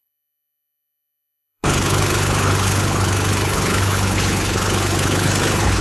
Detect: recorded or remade remade